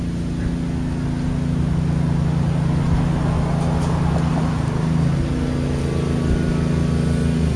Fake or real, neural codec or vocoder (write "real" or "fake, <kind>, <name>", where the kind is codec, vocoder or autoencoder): real